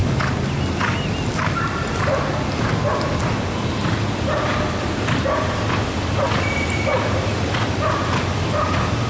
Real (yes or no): yes